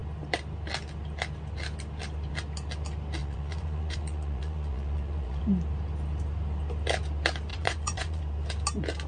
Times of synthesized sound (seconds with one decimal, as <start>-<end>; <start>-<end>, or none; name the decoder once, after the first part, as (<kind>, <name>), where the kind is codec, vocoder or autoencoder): 3.2-5.4 (vocoder, Vocos); 7.5-8.2